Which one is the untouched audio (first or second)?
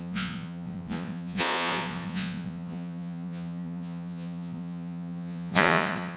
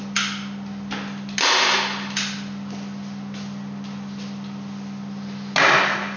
second